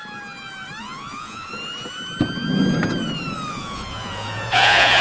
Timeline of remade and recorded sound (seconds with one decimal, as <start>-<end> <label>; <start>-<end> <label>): 0.0-0.8 recorded; 0.8-1.5 remade; 1.5-3.5 recorded; 3.5-5.0 remade